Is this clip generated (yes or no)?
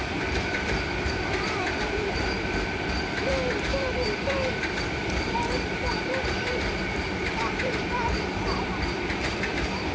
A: yes